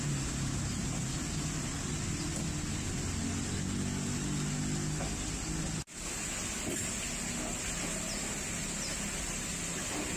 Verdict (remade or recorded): recorded